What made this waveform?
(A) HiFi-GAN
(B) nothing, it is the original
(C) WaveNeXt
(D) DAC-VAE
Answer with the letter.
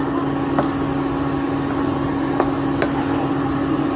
B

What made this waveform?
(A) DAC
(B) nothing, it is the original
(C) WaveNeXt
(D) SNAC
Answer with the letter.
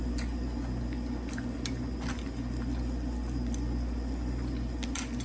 B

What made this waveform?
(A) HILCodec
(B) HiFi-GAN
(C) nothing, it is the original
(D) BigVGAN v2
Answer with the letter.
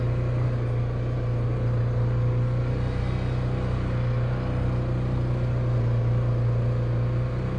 C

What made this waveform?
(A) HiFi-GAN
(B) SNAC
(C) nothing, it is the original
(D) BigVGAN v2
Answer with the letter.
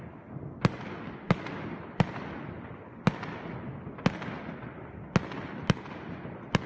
C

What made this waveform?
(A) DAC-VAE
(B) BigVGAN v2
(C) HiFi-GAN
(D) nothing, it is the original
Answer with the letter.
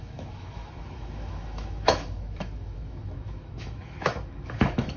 A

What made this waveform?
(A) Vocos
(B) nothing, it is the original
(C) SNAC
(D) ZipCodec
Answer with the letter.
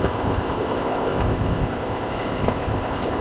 D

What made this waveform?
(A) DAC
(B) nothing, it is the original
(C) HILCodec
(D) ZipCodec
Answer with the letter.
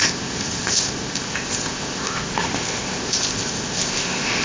D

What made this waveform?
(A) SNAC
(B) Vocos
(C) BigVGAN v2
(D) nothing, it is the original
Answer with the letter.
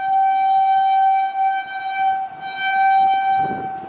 D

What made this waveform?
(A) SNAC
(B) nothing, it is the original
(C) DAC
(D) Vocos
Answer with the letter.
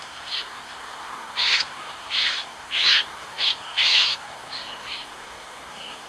A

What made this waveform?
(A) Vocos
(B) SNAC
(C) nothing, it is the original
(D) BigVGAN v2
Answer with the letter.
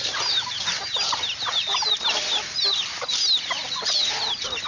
C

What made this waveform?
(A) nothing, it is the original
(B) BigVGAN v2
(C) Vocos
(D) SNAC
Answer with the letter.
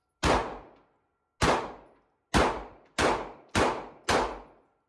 A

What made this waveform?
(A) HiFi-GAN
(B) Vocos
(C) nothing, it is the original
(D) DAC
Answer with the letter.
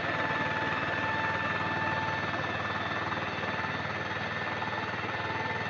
C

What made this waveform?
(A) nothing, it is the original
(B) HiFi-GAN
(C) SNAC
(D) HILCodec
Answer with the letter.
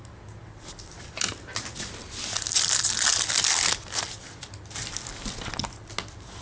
A